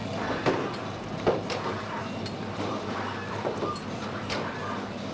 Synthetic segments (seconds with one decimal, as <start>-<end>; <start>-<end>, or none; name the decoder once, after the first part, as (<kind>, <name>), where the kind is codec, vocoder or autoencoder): 2.0-4.4 (vocoder, BigVGAN v2)